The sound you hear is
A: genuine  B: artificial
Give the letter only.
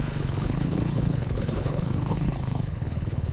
B